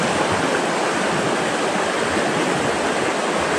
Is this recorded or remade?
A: recorded